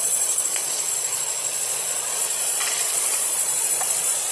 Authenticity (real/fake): fake